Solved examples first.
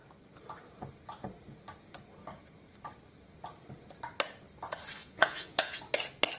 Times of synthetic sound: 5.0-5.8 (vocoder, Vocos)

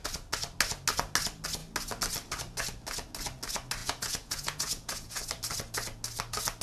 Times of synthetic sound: 3.8-5.2 (vocoder, Vocos)

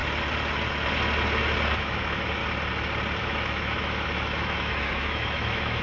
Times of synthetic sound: 1.8-2.4 (autoencoder, DAC-VAE); 3.2-5.8